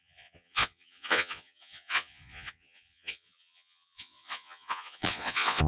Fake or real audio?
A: fake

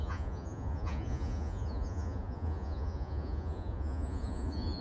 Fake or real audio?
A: fake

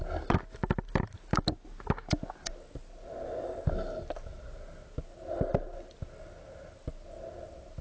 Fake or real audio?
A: real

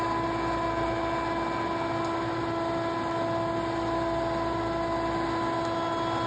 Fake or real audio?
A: real